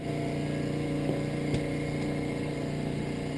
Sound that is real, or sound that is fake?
real